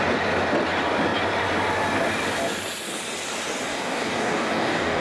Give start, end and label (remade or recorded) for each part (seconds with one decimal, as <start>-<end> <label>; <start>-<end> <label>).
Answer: 0.0-3.7 recorded; 3.7-5.0 remade